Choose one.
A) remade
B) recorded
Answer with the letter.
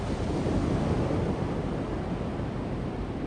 A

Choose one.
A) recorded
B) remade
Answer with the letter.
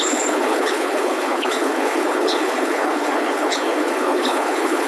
B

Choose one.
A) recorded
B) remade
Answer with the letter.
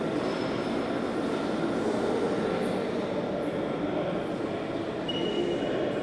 A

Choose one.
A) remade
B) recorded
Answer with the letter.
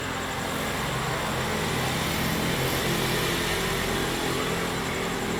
B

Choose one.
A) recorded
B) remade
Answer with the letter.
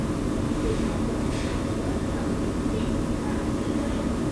A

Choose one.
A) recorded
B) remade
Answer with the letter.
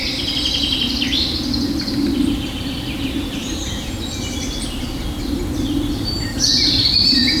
A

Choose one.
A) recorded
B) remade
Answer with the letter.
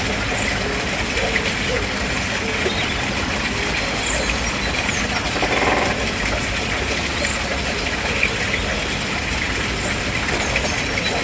A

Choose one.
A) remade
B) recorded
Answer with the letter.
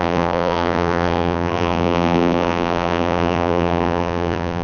A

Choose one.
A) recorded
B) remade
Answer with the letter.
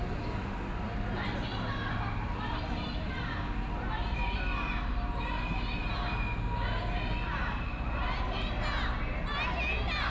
A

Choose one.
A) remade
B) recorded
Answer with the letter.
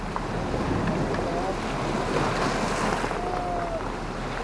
B